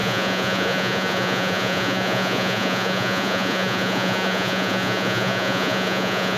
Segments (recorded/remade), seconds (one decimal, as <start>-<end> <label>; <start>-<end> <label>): 0.0-6.4 remade